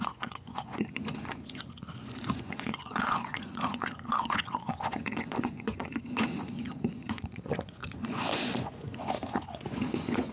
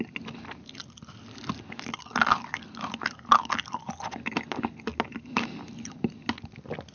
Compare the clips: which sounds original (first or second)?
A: second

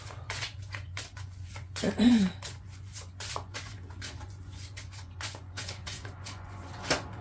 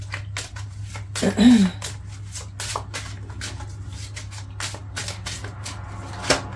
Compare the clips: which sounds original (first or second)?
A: second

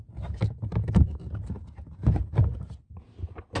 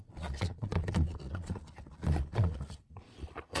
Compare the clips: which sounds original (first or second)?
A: first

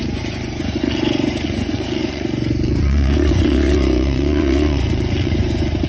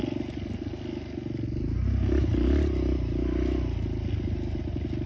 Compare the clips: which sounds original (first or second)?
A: second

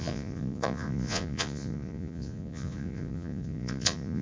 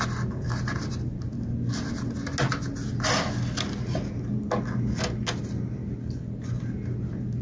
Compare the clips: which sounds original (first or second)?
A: second